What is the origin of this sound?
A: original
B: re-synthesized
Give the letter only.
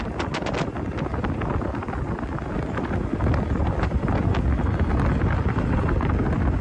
A